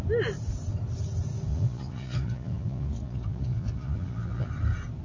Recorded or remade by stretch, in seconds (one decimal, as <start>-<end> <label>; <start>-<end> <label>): 0.0-1.5 recorded; 1.5-4.5 remade; 4.5-5.0 recorded